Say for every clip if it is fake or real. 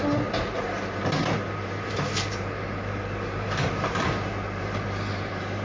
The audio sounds fake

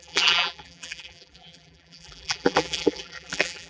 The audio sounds fake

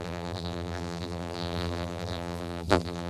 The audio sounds fake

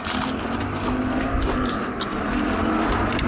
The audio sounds real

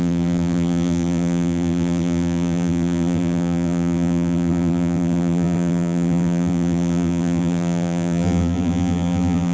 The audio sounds fake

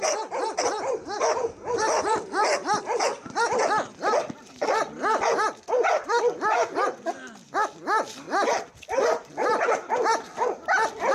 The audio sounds real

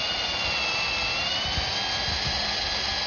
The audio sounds real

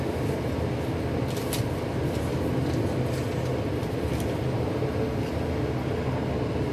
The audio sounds real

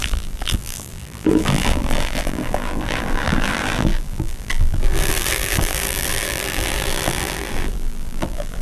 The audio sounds fake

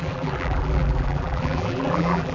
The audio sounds fake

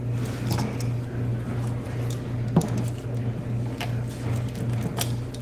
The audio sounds real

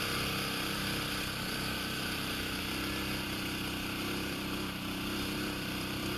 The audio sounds fake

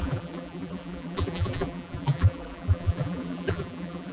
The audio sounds fake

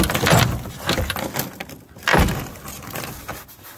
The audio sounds real